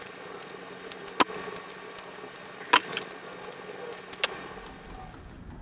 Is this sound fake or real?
real